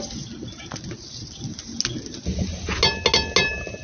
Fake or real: real